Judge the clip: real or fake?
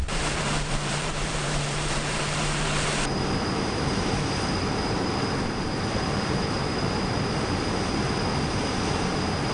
fake